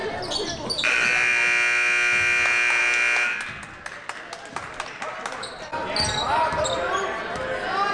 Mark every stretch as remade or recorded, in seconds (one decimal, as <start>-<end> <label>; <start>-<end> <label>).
0.0-7.9 recorded